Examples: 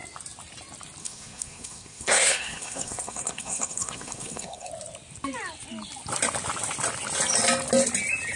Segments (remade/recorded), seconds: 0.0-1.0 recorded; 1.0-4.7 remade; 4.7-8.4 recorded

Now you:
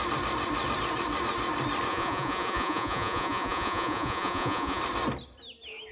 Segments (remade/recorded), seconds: 0.0-1.9 recorded; 1.9-4.8 remade; 4.8-5.9 recorded

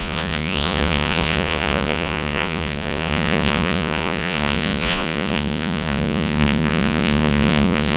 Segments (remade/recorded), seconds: 0.0-8.0 remade

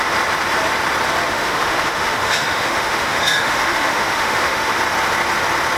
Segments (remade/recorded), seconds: 0.0-1.3 recorded; 1.3-4.8 remade; 4.8-5.8 recorded